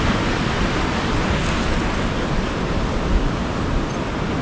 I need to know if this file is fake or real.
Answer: real